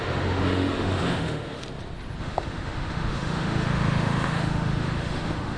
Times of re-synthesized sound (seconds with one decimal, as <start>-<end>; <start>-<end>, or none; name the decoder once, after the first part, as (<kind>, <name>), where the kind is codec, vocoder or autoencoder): 0.0-1.6 (autoencoder, DAC-VAE); 2.2-5.6